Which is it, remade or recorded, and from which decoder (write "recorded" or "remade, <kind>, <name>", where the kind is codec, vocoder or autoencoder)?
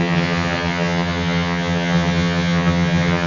remade, vocoder, HiFi-GAN